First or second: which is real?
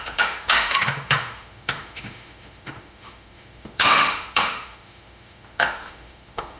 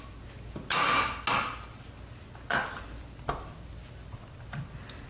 second